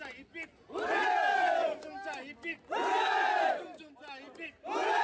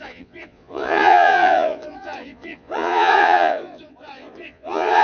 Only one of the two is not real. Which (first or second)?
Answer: second